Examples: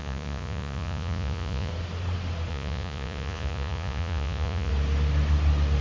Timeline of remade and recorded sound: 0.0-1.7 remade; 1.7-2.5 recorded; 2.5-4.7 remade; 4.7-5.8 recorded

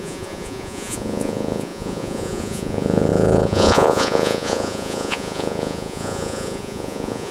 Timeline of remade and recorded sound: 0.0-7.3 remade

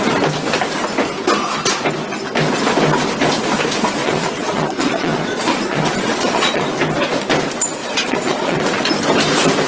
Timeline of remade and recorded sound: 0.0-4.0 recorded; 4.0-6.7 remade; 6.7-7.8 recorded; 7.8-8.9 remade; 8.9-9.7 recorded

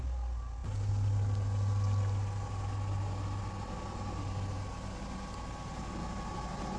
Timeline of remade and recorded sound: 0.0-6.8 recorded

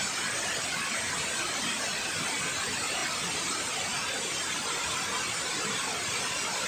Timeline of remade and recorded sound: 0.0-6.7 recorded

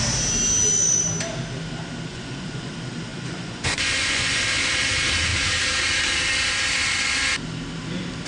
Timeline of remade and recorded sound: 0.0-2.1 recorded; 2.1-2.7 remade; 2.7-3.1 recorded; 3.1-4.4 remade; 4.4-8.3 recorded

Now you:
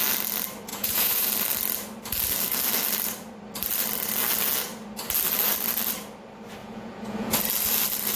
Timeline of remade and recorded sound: 0.0-0.7 recorded; 0.7-1.3 remade; 1.3-6.6 recorded; 6.6-7.4 remade; 7.4-8.2 recorded